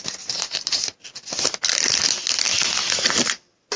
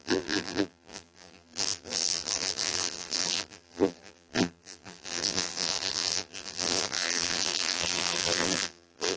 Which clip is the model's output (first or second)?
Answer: second